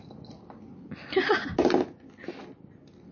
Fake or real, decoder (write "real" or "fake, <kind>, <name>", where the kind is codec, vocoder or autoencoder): real